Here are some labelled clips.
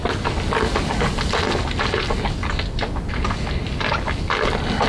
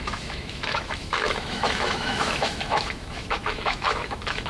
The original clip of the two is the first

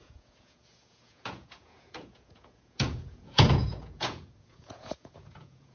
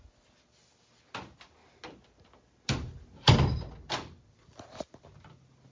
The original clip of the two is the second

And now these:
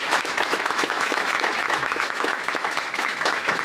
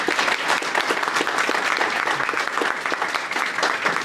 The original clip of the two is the second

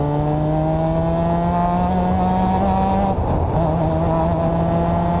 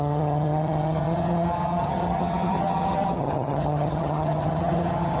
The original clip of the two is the first